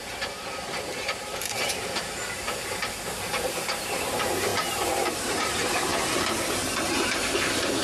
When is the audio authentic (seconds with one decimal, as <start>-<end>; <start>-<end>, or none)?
5.9-7.8